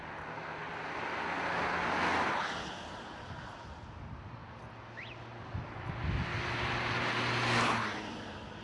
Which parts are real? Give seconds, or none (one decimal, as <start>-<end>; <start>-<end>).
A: 0.0-8.6